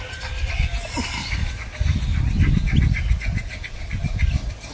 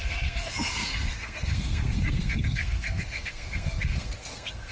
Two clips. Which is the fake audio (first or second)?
second